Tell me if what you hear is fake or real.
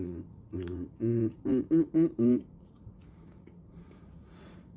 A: fake